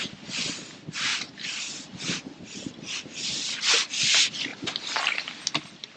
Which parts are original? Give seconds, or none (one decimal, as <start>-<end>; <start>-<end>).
0.0-1.1; 3.9-6.0